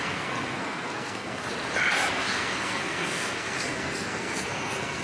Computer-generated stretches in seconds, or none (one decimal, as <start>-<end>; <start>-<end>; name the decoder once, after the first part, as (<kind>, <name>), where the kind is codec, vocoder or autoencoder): 0.0-1.5 (codec, SNAC); 2.1-5.0